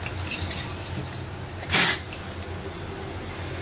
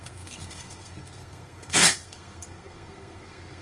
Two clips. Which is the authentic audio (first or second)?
first